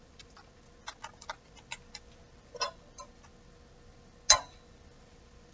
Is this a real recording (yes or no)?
yes